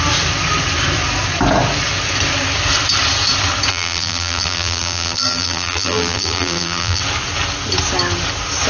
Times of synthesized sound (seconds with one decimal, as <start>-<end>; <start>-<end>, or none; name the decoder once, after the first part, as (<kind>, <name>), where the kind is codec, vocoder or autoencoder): 3.7-7.0 (vocoder, BigVGAN v2)